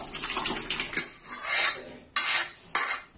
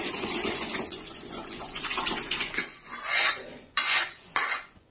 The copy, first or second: second